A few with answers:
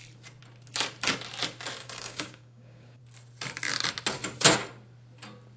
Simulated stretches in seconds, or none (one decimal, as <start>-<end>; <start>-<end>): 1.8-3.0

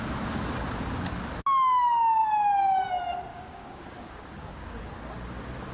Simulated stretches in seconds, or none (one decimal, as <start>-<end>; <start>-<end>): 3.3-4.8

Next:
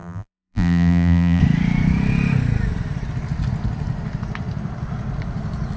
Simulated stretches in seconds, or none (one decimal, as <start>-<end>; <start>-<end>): 0.0-1.4

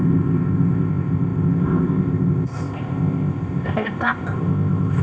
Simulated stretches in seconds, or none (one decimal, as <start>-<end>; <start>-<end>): 0.0-5.0

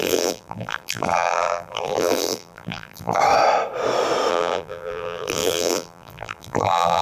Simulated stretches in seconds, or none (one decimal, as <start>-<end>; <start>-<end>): 0.0-3.2; 4.3-7.0

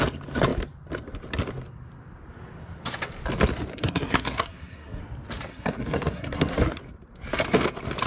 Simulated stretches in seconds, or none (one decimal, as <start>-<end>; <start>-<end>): 3.7-5.0; 5.5-6.8

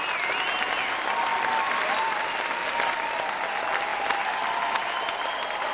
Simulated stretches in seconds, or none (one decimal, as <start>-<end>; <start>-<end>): none